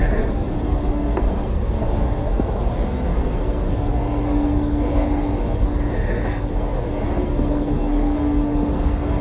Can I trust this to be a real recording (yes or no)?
no